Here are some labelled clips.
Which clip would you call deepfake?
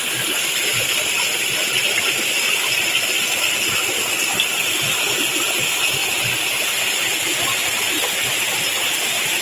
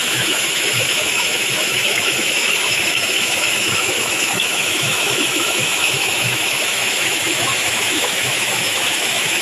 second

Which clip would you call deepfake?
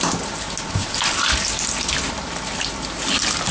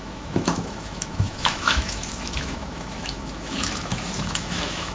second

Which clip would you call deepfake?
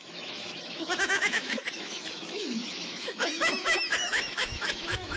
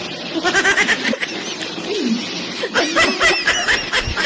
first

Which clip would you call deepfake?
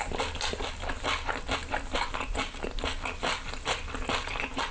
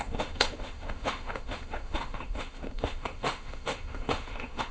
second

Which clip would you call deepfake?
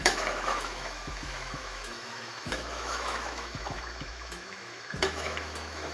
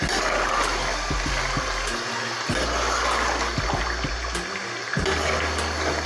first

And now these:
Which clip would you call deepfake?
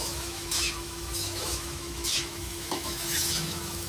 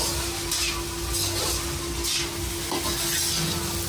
first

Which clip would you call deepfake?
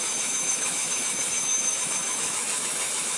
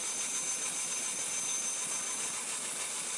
first